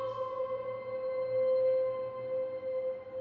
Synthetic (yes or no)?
no